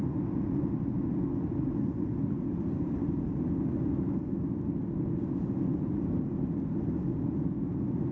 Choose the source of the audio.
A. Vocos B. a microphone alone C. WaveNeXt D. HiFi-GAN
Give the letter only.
B